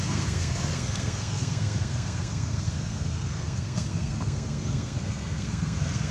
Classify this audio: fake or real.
fake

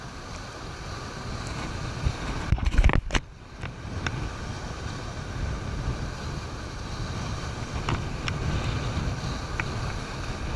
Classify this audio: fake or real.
real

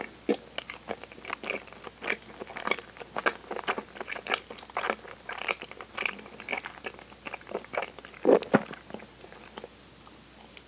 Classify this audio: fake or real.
real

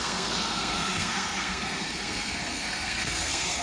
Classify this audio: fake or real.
fake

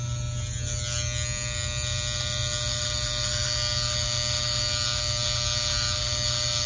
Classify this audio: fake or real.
real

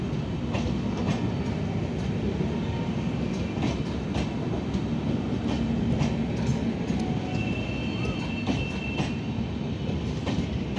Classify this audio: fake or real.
real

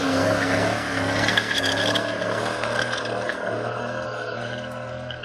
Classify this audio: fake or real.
fake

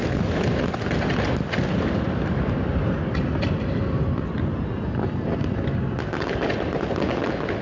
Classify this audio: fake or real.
real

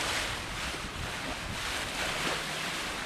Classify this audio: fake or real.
real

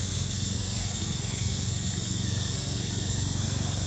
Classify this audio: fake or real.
fake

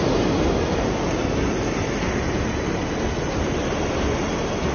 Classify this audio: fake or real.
real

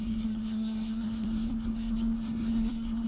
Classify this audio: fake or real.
fake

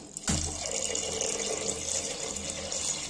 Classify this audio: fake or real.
real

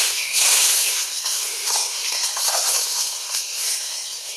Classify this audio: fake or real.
fake